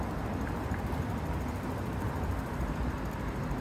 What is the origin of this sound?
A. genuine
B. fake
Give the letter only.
A